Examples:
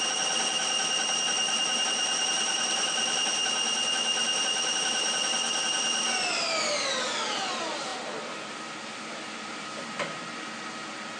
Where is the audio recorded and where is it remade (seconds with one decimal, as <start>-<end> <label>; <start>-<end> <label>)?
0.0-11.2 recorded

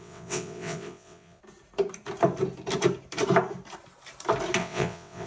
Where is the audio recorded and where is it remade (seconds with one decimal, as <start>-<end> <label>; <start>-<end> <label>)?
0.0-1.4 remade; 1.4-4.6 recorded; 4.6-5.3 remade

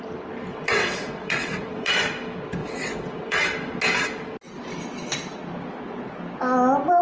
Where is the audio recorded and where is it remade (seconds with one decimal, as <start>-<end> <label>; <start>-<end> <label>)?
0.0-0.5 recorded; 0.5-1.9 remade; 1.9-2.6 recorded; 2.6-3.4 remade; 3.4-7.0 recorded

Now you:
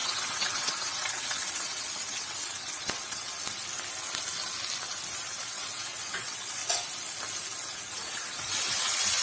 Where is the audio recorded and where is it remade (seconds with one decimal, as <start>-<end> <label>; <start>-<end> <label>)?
0.0-3.3 remade; 3.3-5.3 recorded; 5.3-6.6 remade; 6.6-7.8 recorded; 7.8-9.2 remade